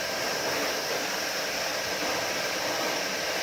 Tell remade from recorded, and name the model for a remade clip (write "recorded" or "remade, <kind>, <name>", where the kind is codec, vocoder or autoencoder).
recorded